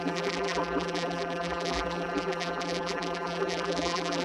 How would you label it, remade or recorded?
remade